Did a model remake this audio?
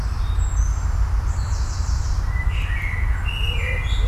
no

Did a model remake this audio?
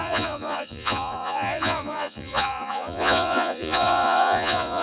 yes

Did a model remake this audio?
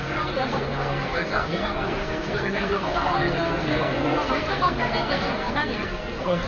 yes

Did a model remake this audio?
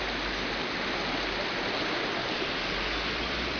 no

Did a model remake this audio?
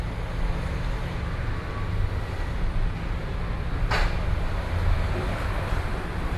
no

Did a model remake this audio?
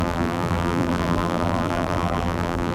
yes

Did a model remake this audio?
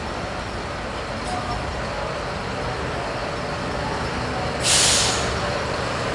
no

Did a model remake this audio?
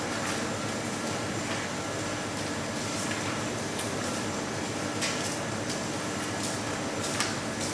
no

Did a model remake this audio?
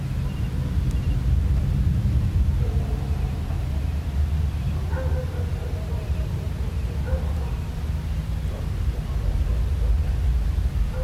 no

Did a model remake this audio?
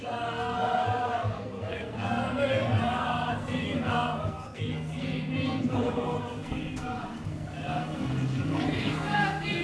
yes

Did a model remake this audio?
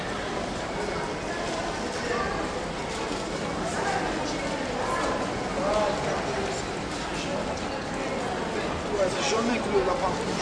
no